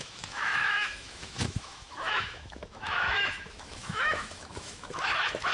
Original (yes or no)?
no